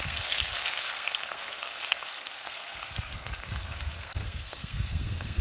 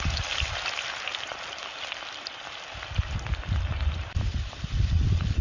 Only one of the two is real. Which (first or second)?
second